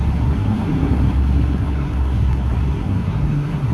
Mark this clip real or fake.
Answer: fake